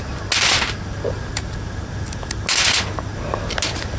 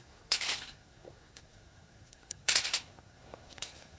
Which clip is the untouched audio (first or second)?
first